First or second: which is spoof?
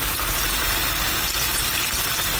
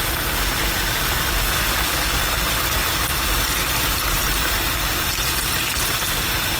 second